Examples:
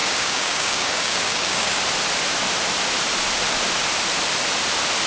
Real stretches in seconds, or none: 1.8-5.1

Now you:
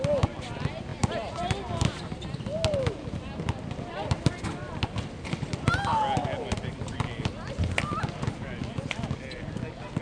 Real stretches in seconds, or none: 0.0-10.0

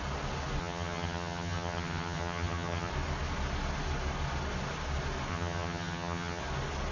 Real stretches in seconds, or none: 0.0-0.6; 2.9-5.3; 6.4-6.9

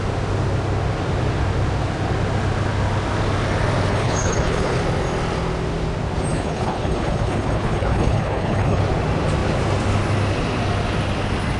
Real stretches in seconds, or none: 0.0-3.9; 4.8-6.3; 8.8-11.6

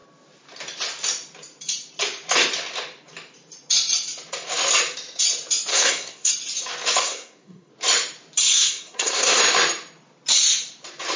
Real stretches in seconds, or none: 0.0-5.7; 6.3-7.0; 7.7-8.4; 9.4-11.2

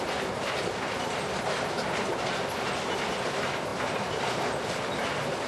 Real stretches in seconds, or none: 0.0-5.5

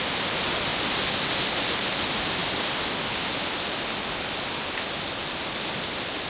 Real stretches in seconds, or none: 0.0-6.3

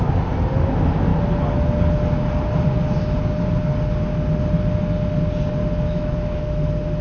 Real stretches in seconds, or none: 0.0-5.6; 6.5-7.0